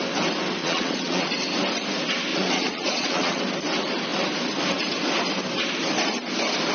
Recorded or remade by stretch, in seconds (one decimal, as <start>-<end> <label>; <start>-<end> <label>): 0.0-0.6 recorded; 0.6-1.3 remade; 1.3-2.3 recorded; 2.3-3.4 remade; 3.4-6.7 recorded